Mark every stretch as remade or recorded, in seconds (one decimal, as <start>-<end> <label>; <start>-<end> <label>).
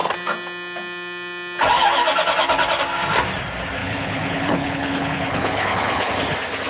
0.0-3.8 recorded; 3.8-6.1 remade; 6.1-6.7 recorded